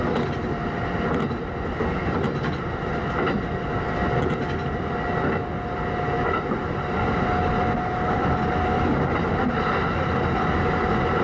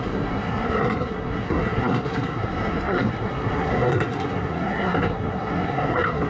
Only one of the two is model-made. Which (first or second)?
second